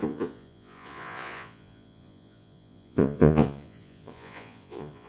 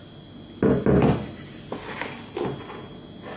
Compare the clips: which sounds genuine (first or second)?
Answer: second